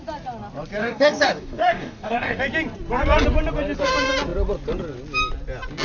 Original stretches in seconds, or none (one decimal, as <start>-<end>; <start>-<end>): 0.0-0.8; 2.4-5.8

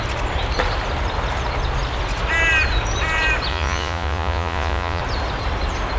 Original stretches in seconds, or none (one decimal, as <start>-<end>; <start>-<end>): 0.0-3.5; 5.0-6.0